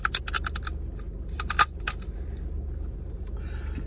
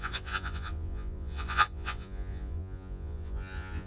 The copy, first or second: second